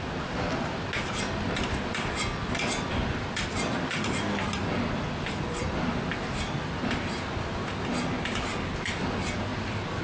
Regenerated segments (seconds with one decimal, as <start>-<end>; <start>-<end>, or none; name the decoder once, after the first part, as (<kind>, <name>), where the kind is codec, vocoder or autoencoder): none